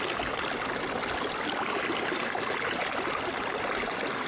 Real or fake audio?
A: real